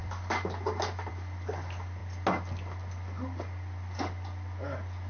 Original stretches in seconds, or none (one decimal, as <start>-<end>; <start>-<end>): 0.0-5.1